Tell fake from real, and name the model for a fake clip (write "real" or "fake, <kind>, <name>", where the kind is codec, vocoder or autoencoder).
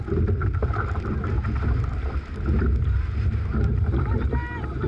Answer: real